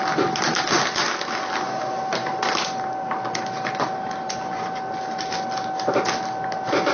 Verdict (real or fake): real